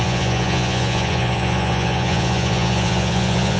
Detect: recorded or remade remade